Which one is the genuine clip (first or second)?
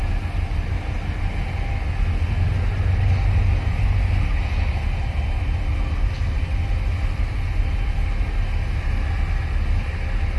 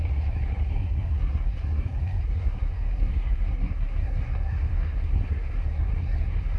first